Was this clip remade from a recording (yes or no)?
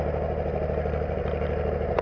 no